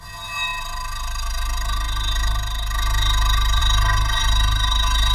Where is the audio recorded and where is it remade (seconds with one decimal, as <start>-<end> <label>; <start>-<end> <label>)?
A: 0.0-5.1 recorded